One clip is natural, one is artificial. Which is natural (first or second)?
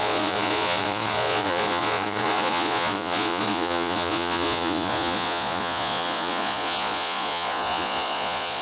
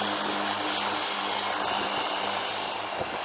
second